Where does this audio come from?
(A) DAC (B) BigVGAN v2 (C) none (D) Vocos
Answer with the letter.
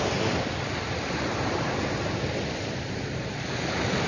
B